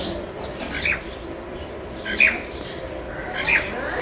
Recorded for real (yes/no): yes